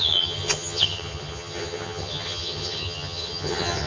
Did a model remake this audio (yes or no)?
yes